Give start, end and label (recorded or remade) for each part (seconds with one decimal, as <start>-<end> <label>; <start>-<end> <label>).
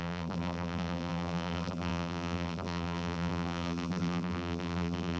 0.0-5.2 remade